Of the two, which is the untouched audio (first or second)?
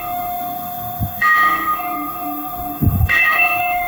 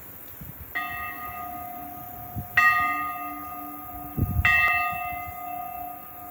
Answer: second